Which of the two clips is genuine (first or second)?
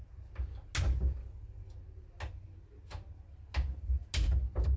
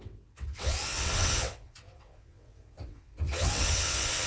first